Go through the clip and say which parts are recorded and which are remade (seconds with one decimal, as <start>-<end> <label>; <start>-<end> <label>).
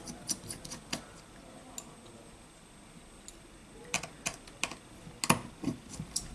0.0-6.3 recorded